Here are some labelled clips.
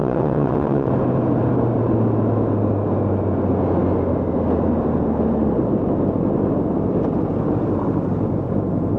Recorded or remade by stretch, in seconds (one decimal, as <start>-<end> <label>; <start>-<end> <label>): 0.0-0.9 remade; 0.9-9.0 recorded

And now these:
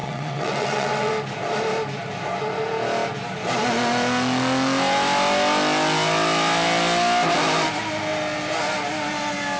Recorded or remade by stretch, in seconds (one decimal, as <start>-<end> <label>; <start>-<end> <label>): 0.0-1.1 remade; 1.1-9.6 recorded

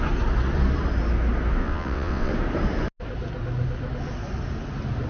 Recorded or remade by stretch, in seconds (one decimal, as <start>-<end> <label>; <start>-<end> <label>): 0.0-1.6 recorded; 1.6-2.3 remade; 2.3-5.1 recorded

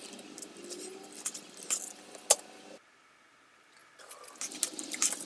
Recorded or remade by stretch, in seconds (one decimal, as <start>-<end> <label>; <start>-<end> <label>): 0.0-5.3 recorded

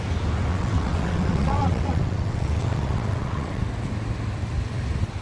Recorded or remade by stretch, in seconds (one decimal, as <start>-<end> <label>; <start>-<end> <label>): 0.0-0.5 recorded; 0.5-3.6 remade; 3.6-5.2 recorded

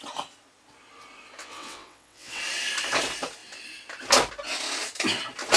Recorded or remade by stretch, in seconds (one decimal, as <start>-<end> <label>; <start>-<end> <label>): 0.0-1.4 recorded; 1.4-2.4 remade; 2.4-5.6 recorded